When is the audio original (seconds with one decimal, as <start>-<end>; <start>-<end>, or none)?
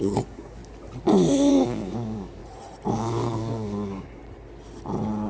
0.6-1.5; 2.4-2.9; 4.2-5.3